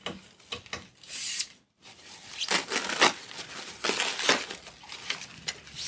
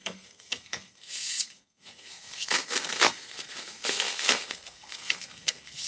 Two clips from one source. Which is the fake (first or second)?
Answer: second